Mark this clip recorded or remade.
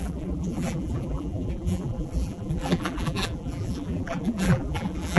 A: remade